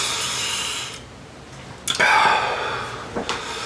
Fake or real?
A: real